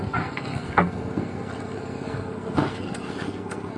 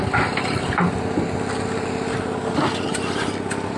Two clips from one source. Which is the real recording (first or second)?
second